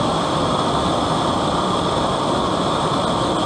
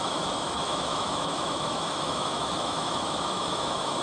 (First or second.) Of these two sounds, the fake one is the second